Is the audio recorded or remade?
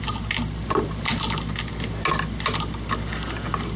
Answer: recorded